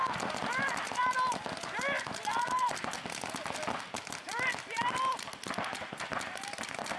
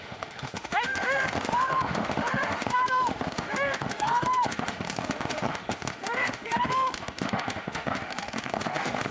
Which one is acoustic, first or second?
first